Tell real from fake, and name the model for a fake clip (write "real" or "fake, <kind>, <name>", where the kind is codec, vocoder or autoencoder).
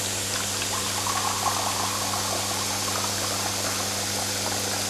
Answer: real